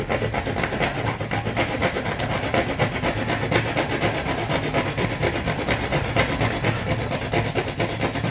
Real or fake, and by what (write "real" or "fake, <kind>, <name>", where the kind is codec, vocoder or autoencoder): real